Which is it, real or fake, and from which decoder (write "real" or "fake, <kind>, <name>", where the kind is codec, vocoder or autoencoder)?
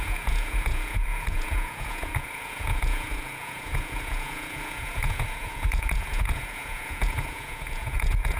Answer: fake, vocoder, Vocos